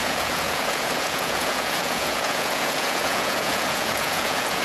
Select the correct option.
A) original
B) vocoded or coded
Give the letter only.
B